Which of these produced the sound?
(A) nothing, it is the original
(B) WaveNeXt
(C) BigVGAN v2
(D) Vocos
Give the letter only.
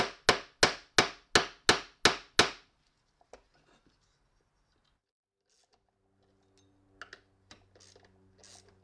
A